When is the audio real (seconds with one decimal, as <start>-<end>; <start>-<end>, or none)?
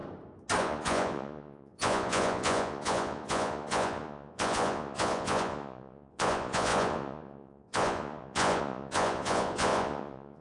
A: 0.0-0.6